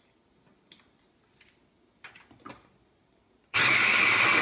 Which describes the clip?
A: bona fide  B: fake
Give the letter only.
A